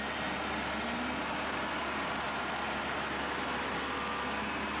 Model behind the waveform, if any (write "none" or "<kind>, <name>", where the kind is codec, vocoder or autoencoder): none